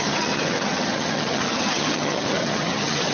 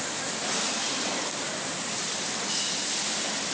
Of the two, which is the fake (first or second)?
first